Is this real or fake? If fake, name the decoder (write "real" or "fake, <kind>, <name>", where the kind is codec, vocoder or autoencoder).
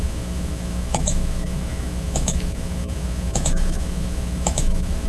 fake, autoencoder, DAC-VAE